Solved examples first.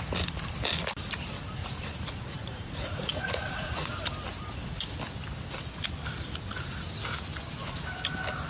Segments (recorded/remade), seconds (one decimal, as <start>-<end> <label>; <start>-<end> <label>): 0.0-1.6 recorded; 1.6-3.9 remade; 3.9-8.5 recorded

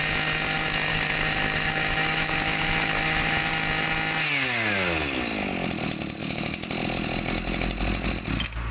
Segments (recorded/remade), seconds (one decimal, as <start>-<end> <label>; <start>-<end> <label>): 0.0-0.9 recorded; 0.9-3.4 remade; 3.4-6.2 recorded; 6.2-6.7 remade; 6.7-8.7 recorded

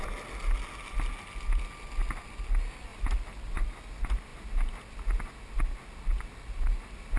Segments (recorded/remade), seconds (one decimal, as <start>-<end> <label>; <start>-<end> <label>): 0.0-7.2 recorded

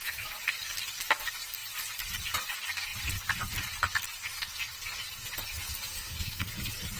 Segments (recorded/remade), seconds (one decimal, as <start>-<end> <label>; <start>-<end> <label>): 0.0-5.9 recorded; 5.9-6.5 remade; 6.5-7.0 recorded

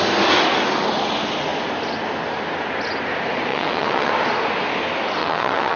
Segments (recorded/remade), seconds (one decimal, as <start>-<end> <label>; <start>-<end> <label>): 0.0-3.5 recorded; 3.5-4.1 remade; 4.1-5.2 recorded; 5.2-5.8 remade